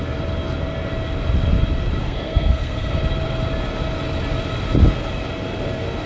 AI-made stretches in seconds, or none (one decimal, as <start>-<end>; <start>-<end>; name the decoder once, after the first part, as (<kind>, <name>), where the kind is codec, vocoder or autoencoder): 2.0-3.0 (codec, SNAC)